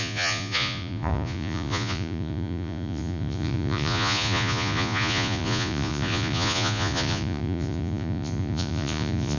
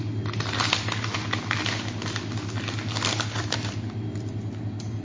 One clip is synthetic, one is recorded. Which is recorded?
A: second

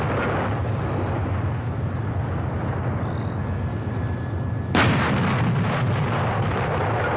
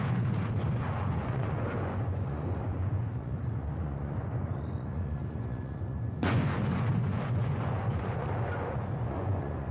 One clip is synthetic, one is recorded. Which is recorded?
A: first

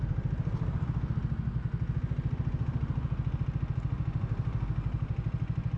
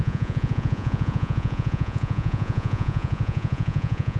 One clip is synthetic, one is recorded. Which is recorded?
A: first